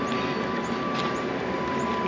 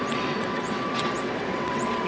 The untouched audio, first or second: first